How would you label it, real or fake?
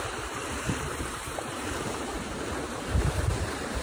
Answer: fake